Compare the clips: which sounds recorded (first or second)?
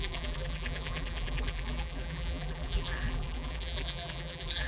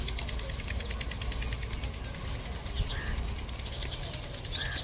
second